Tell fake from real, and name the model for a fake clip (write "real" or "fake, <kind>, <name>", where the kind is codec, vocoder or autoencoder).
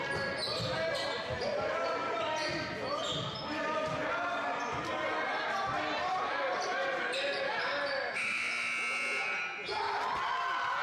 real